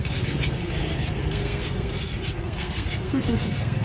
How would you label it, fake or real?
fake